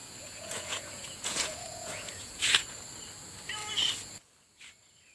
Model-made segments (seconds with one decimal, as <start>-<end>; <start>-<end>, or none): 0.0-2.8